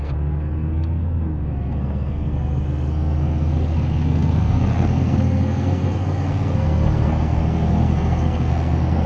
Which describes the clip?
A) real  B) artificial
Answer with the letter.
B